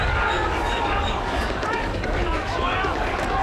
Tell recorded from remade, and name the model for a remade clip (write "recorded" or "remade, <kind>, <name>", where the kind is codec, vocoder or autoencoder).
remade, codec, DAC